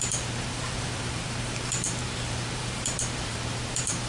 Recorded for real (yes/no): no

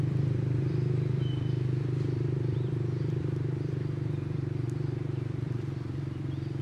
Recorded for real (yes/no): no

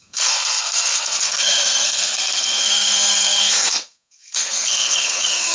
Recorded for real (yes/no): no